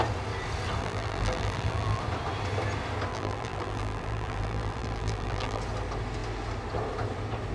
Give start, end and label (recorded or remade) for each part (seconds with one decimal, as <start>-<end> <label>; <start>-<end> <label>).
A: 0.0-0.8 recorded; 0.8-2.0 remade; 2.0-3.1 recorded; 3.1-5.6 remade; 5.6-7.5 recorded